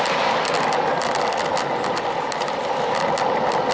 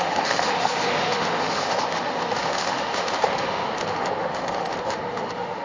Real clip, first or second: first